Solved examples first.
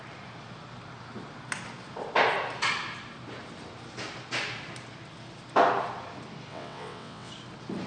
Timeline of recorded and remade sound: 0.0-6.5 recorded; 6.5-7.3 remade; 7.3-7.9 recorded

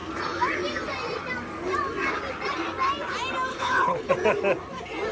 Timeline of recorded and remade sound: 0.0-3.5 recorded; 3.5-4.1 remade; 4.1-5.1 recorded

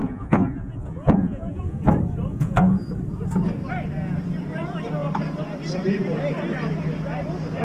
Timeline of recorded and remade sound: 0.0-1.9 remade; 1.9-2.3 recorded; 2.3-2.9 remade; 2.9-7.6 recorded

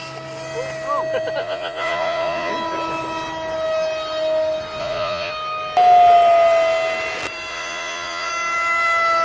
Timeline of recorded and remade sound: 0.0-1.4 recorded; 1.4-2.5 remade; 2.5-4.8 recorded; 4.8-5.3 remade; 5.3-7.5 recorded; 7.5-8.3 remade; 8.3-9.2 recorded